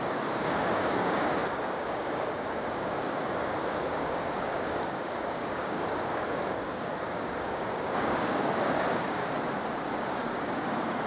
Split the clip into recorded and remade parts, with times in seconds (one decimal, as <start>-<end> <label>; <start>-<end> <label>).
0.0-9.2 remade; 9.2-10.1 recorded; 10.1-11.1 remade